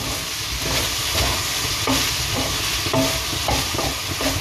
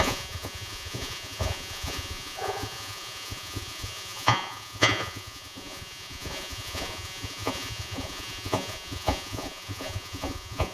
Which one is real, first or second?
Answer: first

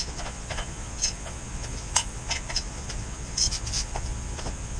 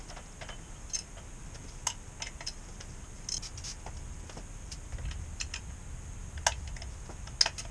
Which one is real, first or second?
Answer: second